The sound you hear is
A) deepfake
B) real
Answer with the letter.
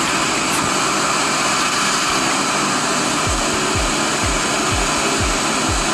B